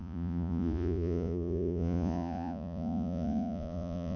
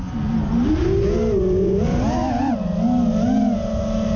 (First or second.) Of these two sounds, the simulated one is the first